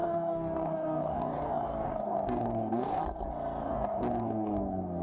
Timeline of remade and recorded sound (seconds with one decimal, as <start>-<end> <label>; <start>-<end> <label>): 0.0-3.0 remade; 3.0-3.6 recorded; 3.6-5.0 remade